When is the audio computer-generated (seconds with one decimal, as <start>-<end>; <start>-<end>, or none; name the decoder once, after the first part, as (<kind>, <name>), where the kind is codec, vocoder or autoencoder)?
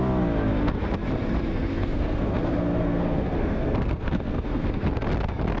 1.5-4.9 (codec, SNAC)